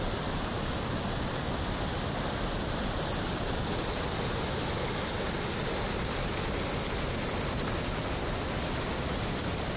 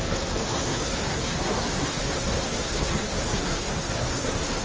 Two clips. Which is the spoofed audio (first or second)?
second